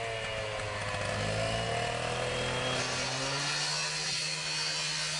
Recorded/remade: recorded